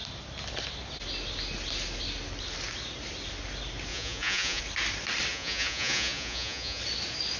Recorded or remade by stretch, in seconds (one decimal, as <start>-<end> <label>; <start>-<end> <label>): 0.0-3.9 recorded; 3.9-4.6 remade; 4.6-5.3 recorded; 5.3-6.8 remade; 6.8-7.4 recorded